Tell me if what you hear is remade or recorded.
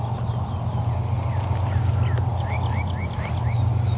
recorded